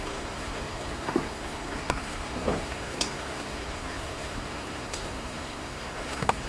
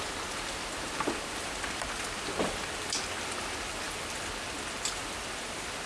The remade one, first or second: first